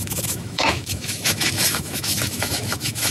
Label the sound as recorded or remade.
remade